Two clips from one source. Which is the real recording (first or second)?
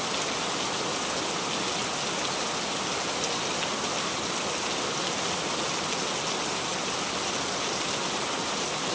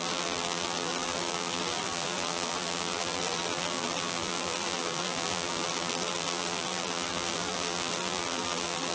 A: first